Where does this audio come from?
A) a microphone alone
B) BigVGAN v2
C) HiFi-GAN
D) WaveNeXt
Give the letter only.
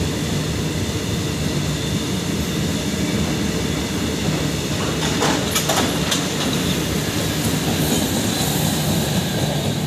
A